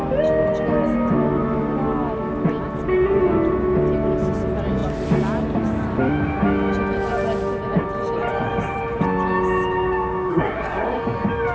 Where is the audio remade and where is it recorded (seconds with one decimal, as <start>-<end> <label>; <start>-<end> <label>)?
0.0-10.3 recorded; 10.3-11.0 remade; 11.0-11.5 recorded